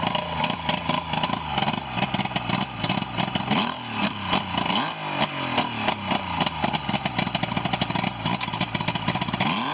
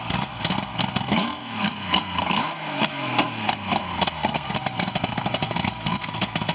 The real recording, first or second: first